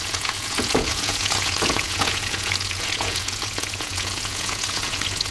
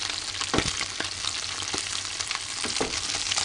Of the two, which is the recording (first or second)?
second